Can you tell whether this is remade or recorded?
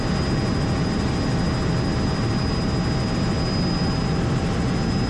recorded